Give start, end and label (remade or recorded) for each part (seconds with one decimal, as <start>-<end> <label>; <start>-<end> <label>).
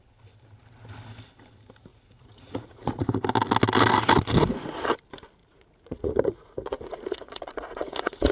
0.0-1.9 recorded; 1.9-3.2 remade; 3.2-5.4 recorded; 5.4-8.3 remade